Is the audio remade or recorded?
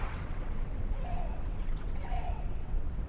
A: remade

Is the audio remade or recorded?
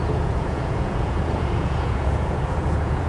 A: remade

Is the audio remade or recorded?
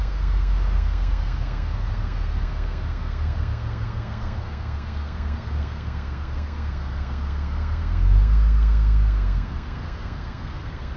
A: remade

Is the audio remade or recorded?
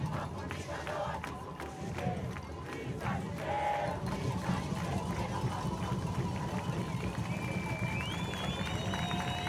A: recorded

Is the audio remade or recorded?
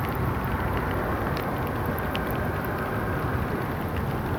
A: recorded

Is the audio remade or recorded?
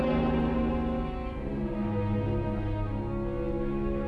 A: recorded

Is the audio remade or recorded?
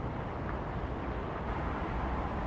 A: recorded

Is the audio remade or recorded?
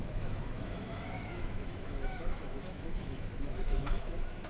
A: remade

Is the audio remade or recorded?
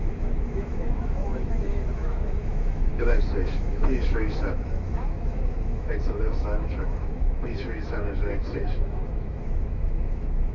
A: remade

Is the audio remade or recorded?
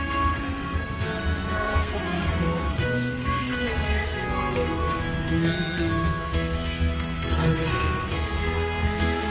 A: remade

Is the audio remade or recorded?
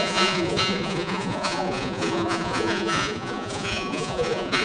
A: remade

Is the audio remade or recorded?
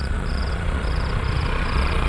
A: remade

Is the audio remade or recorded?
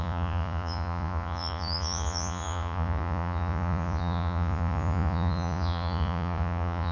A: remade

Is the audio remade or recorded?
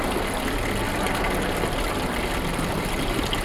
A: recorded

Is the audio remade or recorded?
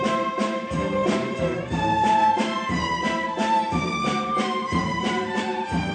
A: remade